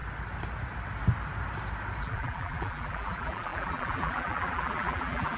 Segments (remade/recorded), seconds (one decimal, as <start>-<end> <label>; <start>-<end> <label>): 0.0-2.0 recorded; 2.0-5.4 remade